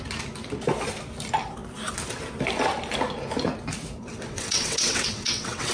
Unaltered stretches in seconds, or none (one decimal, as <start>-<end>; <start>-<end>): 0.0-4.0